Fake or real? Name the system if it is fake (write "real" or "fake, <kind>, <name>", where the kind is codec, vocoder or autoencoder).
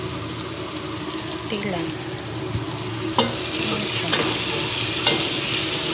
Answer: real